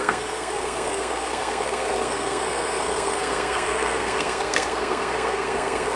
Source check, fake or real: fake